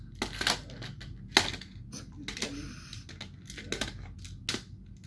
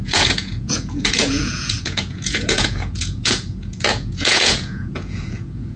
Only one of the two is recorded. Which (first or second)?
first